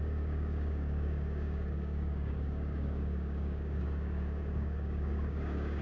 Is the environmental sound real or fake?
fake